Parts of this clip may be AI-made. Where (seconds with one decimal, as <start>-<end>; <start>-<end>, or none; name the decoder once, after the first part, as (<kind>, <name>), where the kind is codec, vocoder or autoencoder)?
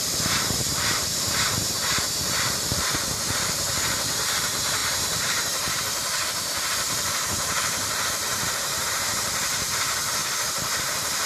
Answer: 0.0-10.2 (vocoder, BigVGAN v2); 10.8-11.3